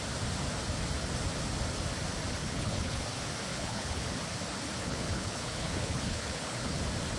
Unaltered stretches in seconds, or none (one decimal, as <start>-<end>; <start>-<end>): 0.0-2.4; 3.0-3.5; 4.1-4.8; 6.8-7.2